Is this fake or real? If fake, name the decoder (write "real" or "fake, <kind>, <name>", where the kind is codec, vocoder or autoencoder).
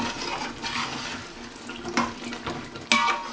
real